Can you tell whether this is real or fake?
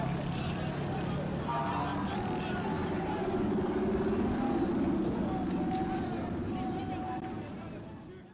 real